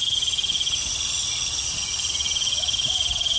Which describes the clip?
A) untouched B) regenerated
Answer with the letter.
A